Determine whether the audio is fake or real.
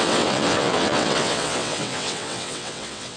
fake